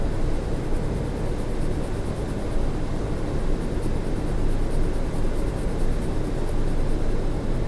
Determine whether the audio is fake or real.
real